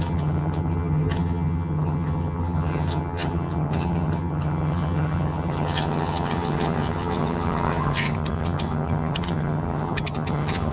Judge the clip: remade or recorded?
remade